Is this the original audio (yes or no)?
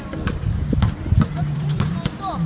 no